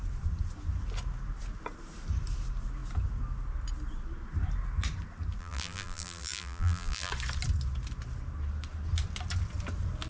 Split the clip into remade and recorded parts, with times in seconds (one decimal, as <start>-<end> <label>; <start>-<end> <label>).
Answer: 0.0-5.4 recorded; 5.4-7.1 remade; 7.1-10.1 recorded